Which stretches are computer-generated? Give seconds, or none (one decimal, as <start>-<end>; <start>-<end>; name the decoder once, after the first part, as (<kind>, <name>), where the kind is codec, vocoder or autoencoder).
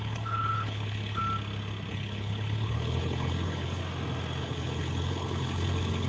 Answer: 0.0-1.2 (codec, HILCodec); 1.9-3.8; 4.4-6.1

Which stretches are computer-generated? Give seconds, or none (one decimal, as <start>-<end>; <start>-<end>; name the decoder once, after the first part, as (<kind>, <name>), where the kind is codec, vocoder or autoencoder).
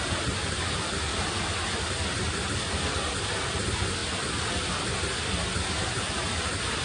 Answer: none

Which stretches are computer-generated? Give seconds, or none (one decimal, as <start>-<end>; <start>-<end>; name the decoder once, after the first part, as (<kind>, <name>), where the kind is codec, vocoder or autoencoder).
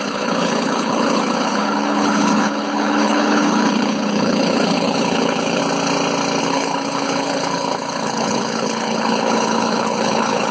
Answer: 0.0-5.6 (codec, HILCodec); 6.4-10.5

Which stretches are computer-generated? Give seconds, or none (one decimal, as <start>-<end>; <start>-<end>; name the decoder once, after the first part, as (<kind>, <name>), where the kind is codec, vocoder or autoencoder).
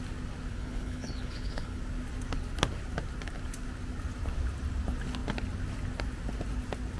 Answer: 0.5-1.8 (codec, HILCodec)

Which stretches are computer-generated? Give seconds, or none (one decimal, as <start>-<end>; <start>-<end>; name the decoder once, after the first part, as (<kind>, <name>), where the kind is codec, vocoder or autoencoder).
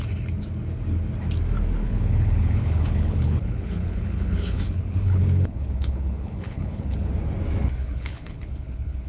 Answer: 1.8-7.1 (codec, HILCodec); 7.8-9.1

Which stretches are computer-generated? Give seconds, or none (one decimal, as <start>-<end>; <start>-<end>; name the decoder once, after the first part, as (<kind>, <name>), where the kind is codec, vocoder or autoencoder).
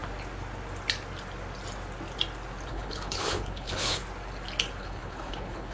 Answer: 2.7-4.0 (codec, HILCodec); 4.8-5.7